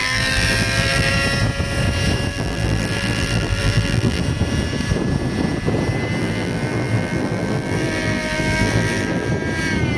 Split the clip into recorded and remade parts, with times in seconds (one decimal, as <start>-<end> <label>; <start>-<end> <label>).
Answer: 0.0-1.1 remade; 1.1-2.3 recorded; 2.3-4.2 remade; 4.2-6.2 recorded; 6.2-9.3 remade; 9.3-10.0 recorded